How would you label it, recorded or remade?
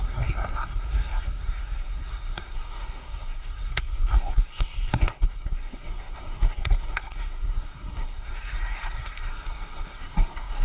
remade